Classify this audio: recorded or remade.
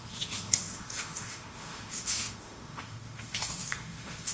remade